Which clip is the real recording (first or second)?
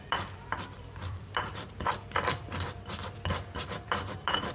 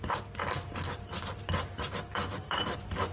second